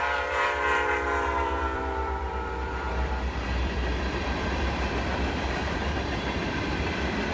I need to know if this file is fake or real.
fake